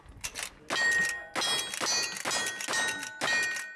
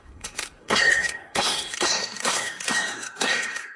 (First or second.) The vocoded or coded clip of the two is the second